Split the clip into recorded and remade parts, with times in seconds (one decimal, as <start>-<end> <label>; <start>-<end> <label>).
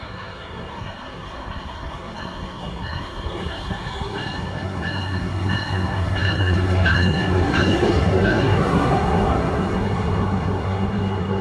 0.0-11.4 remade